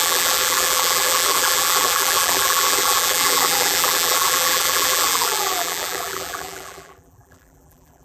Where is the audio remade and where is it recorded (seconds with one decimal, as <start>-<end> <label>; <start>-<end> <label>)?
0.0-8.0 remade